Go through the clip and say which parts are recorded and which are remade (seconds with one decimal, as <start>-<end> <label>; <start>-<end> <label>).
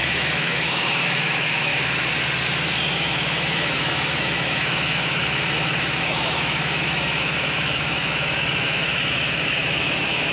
0.0-1.7 remade; 1.7-2.9 recorded; 2.9-10.3 remade